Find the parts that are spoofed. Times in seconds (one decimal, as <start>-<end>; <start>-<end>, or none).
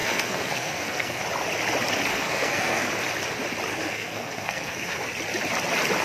0.0-1.2; 2.1-2.9; 3.7-5.0